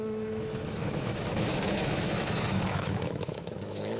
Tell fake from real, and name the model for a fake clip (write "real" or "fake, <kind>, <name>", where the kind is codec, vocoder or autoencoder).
fake, autoencoder, DAC-VAE